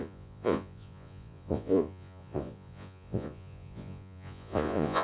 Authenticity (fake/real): fake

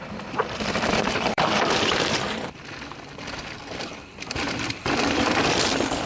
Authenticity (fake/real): fake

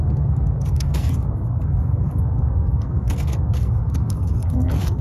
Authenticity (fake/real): fake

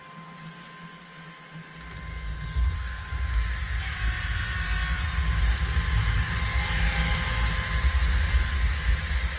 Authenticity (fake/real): real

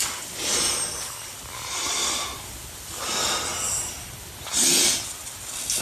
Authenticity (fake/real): real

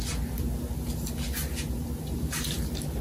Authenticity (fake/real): real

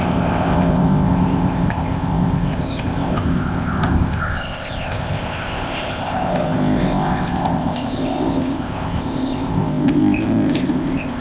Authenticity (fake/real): fake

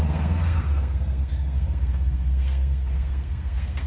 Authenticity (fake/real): fake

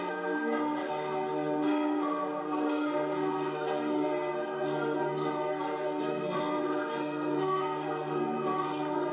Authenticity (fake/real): fake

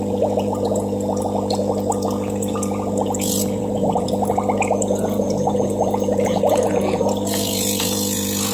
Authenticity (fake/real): fake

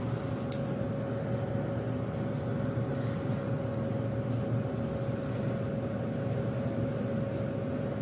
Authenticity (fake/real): real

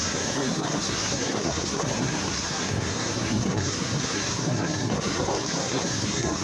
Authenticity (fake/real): fake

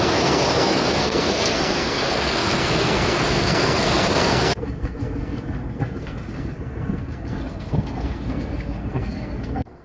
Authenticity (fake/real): fake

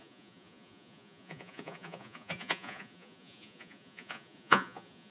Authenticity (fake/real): fake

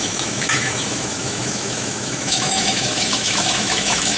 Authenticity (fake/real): fake